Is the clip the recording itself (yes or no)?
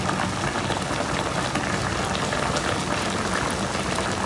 yes